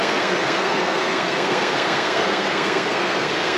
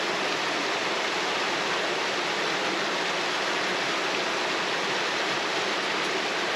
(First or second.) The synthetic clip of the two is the first